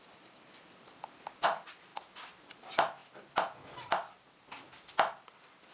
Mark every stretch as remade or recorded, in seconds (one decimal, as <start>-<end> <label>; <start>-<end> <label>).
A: 0.0-5.7 recorded